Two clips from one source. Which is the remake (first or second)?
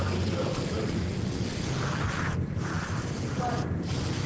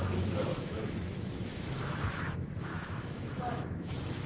second